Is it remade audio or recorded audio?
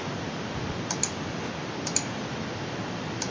recorded